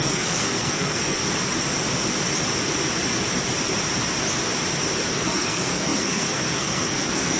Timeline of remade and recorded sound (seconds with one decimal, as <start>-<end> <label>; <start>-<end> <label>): 0.0-1.2 remade; 1.2-5.1 recorded; 5.1-7.4 remade